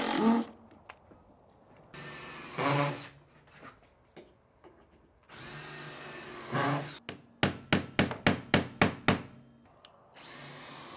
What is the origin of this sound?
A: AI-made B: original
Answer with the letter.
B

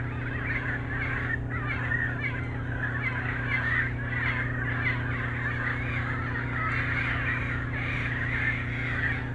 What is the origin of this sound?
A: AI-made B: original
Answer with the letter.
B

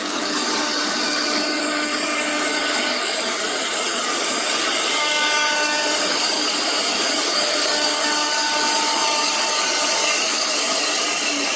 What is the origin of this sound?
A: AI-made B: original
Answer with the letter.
A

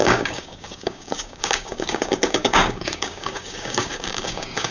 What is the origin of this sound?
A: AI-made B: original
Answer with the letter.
A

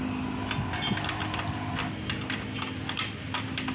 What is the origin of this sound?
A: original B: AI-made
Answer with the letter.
A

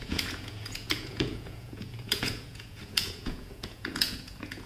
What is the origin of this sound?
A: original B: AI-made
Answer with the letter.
B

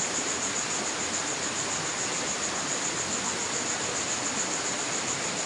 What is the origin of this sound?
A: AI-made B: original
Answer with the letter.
B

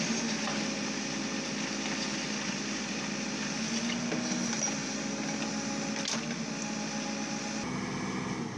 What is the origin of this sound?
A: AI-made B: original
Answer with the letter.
B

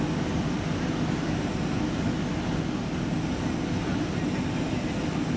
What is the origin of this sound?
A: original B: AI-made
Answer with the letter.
A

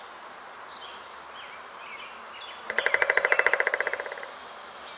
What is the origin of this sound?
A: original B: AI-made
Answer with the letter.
A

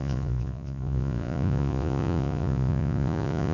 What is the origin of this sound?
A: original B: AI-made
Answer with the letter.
B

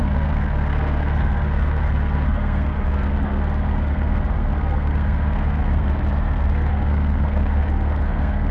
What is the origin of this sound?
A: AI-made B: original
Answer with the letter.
A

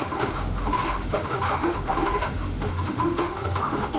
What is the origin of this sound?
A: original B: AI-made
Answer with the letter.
B